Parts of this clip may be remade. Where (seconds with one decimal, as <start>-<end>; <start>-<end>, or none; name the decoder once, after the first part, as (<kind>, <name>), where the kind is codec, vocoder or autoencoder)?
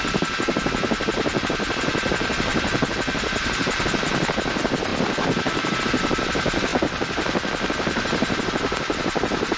none